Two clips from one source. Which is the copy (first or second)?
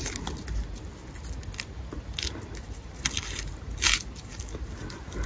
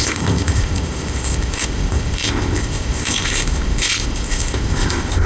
second